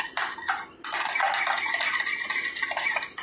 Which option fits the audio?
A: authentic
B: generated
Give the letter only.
A